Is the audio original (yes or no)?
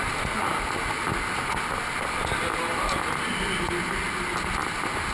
yes